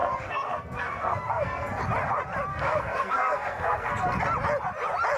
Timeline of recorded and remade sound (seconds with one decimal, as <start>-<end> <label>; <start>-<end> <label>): 0.0-1.8 remade; 1.8-2.5 recorded; 2.5-4.2 remade; 4.2-5.2 recorded